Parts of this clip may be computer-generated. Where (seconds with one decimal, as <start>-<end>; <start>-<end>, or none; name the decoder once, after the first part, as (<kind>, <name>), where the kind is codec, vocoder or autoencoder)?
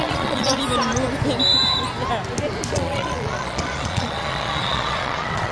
0.0-0.6 (vocoder, Vocos); 2.7-5.5